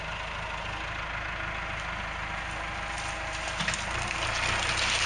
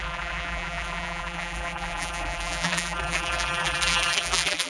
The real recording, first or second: first